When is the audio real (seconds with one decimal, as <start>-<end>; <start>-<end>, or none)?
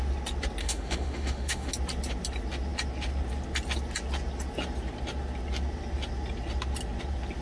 0.0-0.6; 1.7-7.4